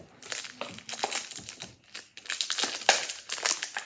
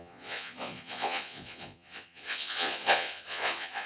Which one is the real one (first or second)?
first